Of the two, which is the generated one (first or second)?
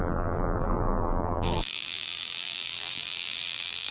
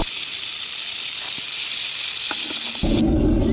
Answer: first